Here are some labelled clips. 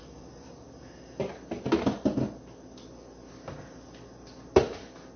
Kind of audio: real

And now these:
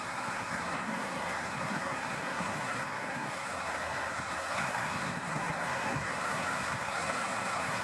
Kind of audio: fake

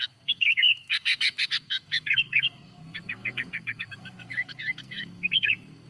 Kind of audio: fake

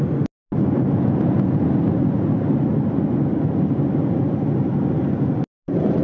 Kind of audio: real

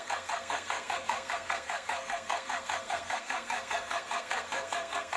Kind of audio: fake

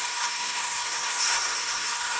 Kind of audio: fake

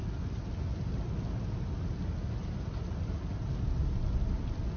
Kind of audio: real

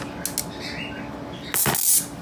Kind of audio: real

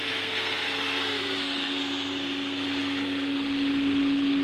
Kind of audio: fake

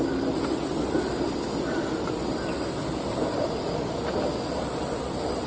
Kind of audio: real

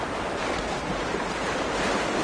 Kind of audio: real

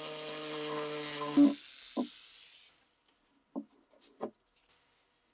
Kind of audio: real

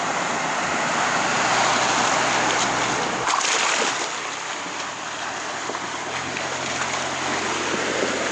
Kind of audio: real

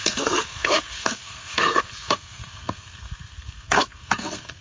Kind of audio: fake